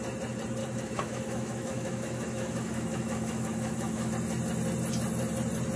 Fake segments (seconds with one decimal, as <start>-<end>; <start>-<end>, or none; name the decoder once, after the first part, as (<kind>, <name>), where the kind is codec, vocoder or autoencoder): 0.6-4.1 (autoencoder, DAC-VAE)